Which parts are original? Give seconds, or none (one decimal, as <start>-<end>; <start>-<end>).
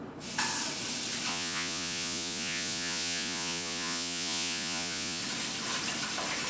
0.0-1.3; 5.2-6.5